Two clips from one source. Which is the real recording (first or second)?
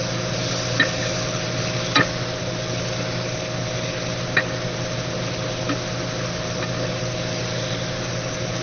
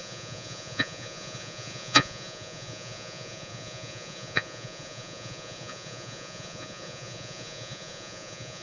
first